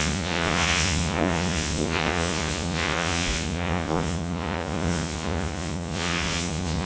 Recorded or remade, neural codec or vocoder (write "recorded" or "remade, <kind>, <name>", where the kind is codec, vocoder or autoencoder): remade, vocoder, Vocos